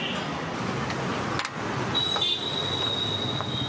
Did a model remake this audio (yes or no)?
no